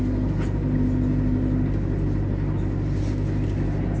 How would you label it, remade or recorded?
recorded